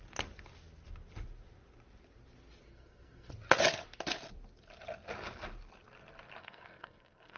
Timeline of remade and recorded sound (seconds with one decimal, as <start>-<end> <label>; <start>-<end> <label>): 0.0-2.7 recorded; 2.7-3.3 remade; 3.3-6.4 recorded; 6.4-7.4 remade